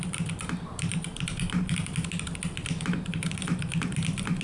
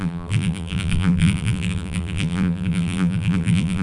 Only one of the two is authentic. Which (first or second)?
first